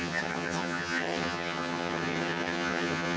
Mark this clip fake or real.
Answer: fake